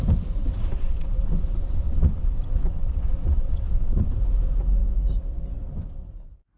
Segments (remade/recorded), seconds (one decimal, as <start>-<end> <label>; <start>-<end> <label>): 0.0-0.4 recorded; 0.4-4.1 remade; 4.1-6.6 recorded